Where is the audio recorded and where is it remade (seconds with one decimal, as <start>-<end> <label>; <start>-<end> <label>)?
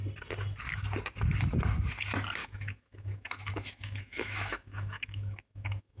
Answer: 0.0-2.4 recorded; 2.4-6.0 remade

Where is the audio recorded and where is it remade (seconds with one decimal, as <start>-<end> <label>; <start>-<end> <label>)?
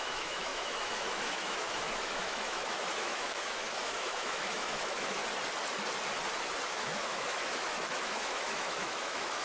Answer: 0.0-5.2 remade; 5.2-6.7 recorded; 6.7-9.4 remade